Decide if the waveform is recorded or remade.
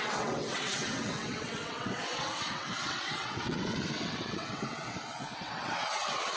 remade